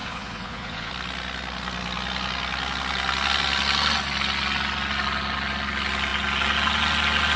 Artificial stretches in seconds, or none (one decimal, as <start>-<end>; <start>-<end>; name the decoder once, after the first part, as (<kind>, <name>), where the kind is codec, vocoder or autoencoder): 0.0-0.9 (vocoder, Vocos)